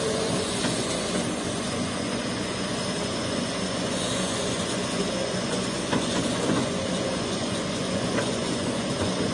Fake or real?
fake